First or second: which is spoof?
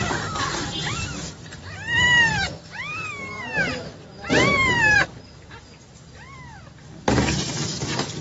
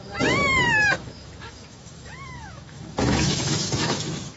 second